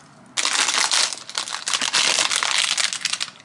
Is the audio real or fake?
real